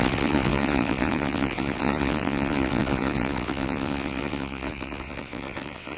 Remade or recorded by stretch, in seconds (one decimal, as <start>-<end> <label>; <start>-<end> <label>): 0.0-6.0 remade